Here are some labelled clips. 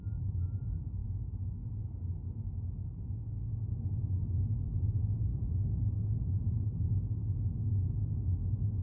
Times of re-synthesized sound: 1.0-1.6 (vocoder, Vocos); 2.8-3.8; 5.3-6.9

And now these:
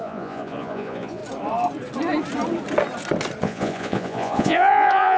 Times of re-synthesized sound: 0.0-1.2 (vocoder, Vocos); 3.4-5.2

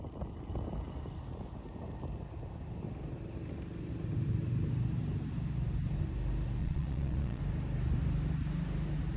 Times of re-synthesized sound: 6.6-7.4 (vocoder, Vocos)